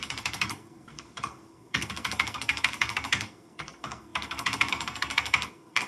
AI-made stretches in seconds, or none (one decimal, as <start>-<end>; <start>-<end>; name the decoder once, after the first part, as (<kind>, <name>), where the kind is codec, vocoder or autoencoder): 0.0-5.9 (codec, SNAC)